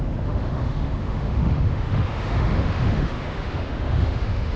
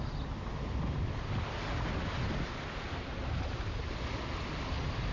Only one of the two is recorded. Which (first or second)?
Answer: second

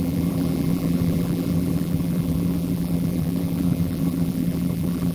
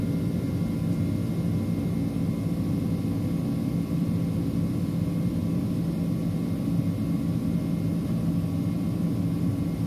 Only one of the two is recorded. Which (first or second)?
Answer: second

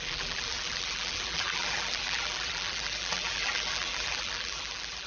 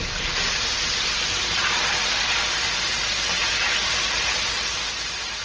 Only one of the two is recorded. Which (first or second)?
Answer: second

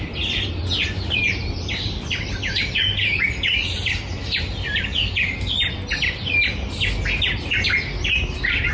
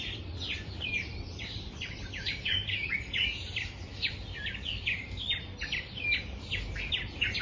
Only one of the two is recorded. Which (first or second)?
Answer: first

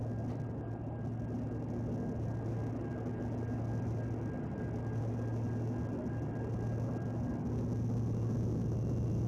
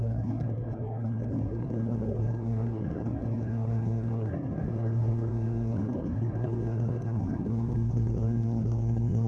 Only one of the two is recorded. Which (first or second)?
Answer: first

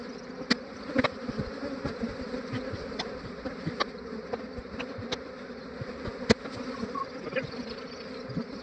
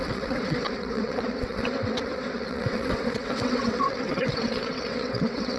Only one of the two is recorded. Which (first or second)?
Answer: first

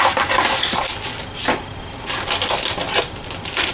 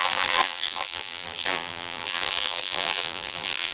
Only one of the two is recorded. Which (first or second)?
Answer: first